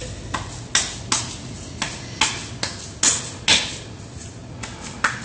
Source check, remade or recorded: recorded